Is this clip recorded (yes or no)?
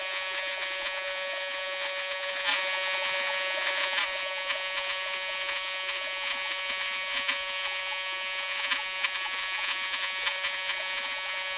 no